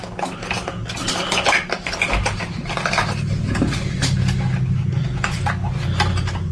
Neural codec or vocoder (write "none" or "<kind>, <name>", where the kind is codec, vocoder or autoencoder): none